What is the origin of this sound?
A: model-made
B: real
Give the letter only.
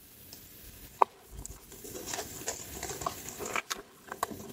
B